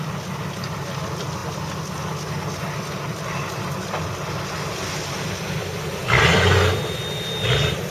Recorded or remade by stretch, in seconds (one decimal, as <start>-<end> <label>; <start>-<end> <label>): 0.0-6.0 recorded; 6.0-7.3 remade; 7.3-7.9 recorded